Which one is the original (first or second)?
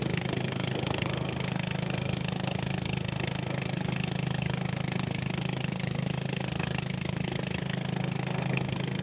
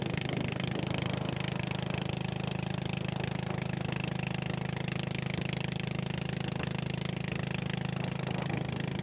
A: second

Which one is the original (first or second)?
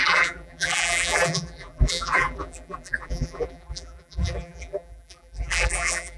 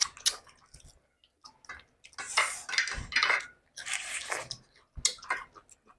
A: second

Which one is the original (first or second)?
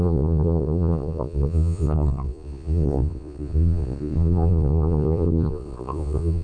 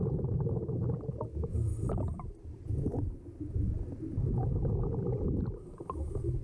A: second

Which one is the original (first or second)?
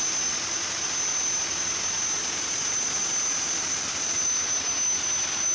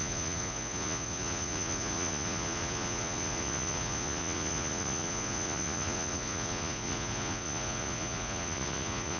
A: first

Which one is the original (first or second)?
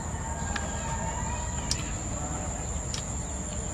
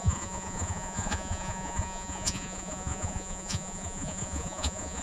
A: first